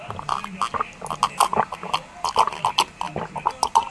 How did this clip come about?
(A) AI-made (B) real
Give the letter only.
B